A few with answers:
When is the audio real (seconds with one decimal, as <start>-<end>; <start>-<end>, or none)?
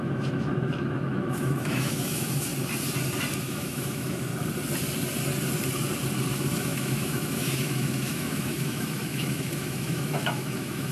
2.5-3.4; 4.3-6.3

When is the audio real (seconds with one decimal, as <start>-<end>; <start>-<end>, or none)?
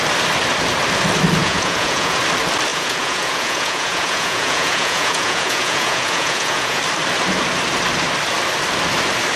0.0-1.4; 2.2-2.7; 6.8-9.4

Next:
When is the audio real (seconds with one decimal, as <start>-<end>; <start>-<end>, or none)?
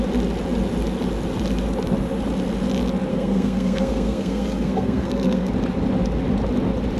0.0-3.1; 5.5-7.0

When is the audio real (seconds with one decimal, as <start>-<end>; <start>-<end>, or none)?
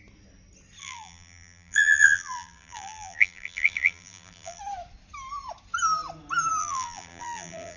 0.0-0.8; 4.6-6.6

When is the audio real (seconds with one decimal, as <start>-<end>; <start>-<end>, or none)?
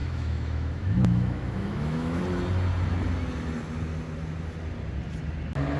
2.2-5.8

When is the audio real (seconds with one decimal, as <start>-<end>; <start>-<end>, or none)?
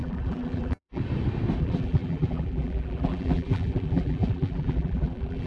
1.0-1.6